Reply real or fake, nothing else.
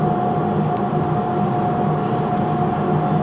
real